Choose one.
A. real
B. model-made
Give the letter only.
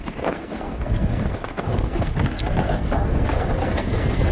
B